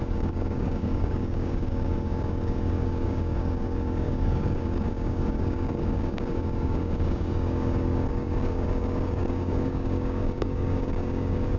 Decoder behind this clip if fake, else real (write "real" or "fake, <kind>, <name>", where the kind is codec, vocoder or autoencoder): fake, codec, DAC